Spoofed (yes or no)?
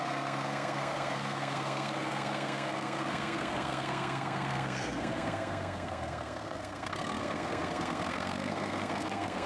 yes